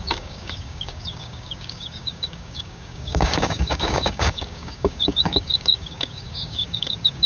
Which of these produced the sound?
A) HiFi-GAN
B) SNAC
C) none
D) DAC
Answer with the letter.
D